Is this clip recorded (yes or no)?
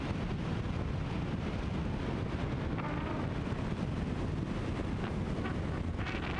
yes